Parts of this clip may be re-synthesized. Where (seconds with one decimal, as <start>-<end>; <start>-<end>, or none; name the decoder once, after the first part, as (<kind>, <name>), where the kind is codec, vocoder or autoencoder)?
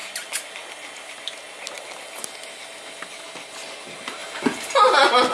none